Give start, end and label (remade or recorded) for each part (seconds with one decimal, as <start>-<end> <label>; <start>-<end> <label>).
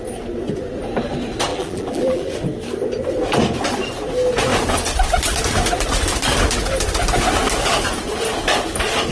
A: 0.0-1.5 recorded; 1.5-2.3 remade; 2.3-9.1 recorded